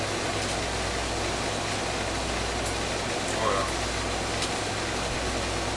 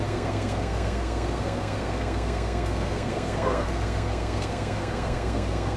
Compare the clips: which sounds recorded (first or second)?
first